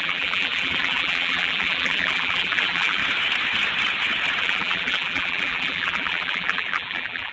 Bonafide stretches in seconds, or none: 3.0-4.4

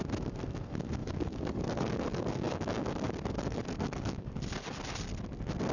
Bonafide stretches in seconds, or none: 0.0-1.0; 4.4-5.7

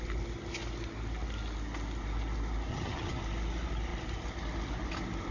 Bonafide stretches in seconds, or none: 0.0-2.7; 3.2-5.3